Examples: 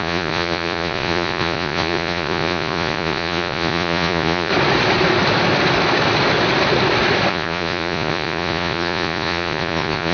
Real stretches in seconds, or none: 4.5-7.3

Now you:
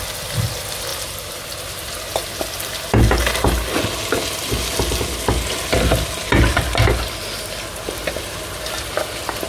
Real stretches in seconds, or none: 0.0-9.5

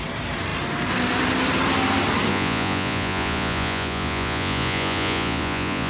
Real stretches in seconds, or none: 0.0-2.3

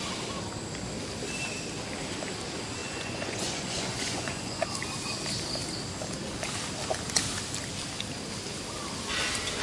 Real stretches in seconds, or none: 0.0-2.8; 4.6-9.6

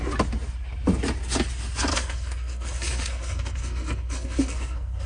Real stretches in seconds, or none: 0.0-1.9

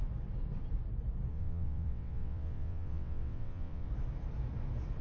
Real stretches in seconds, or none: 0.0-1.3; 3.9-5.0